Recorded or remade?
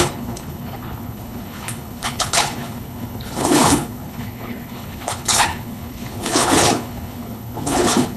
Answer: remade